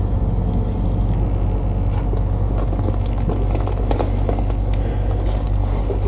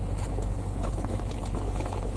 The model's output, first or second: second